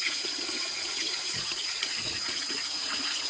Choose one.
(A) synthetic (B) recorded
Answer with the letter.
A